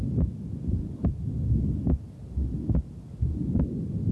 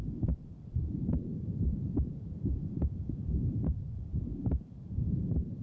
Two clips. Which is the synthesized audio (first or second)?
second